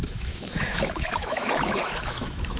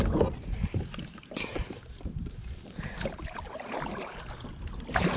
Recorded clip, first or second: second